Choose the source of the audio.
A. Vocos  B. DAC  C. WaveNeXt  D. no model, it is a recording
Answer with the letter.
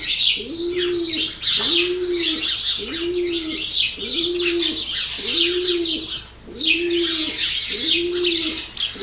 D